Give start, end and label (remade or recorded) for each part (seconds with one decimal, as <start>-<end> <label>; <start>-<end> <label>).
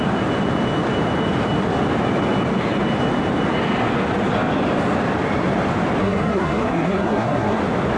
0.0-6.0 recorded; 6.0-7.6 remade; 7.6-8.0 recorded